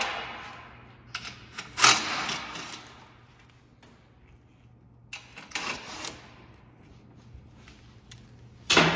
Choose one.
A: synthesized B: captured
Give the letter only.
B